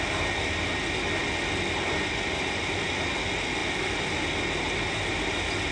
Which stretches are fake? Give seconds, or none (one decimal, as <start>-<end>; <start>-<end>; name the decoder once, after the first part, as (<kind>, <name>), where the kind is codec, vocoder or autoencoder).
none